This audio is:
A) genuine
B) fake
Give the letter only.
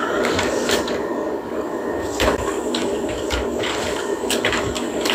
B